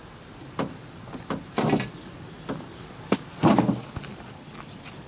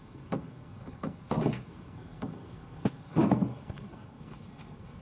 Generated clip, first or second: second